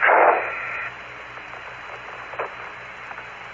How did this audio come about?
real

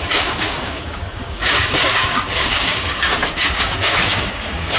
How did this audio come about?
fake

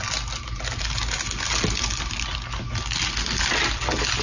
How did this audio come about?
real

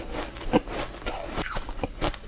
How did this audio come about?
real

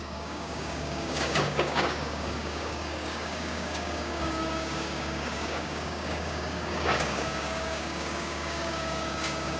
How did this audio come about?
fake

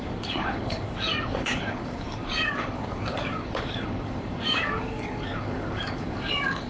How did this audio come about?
fake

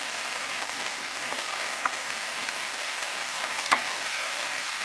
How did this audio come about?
fake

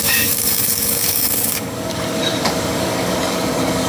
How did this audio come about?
fake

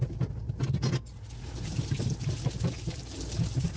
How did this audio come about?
real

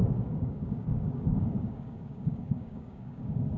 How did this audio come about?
fake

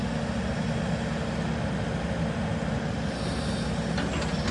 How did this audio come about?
real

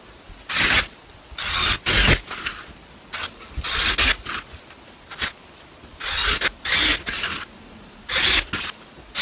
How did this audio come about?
real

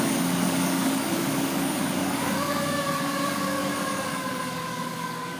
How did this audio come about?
fake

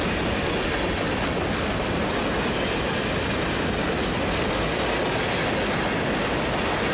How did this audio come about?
real